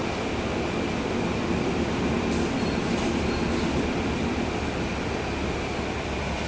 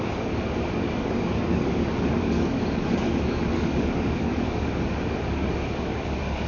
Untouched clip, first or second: first